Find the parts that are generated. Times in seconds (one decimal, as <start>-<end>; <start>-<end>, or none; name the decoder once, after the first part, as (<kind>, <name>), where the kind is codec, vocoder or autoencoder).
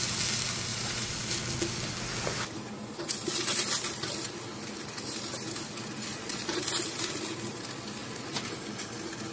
0.7-1.3 (vocoder, Vocos); 6.1-6.6